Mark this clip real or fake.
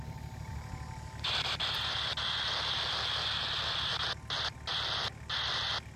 real